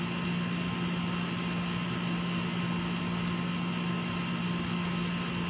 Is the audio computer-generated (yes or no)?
no